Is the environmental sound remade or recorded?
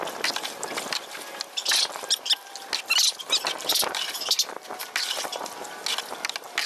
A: recorded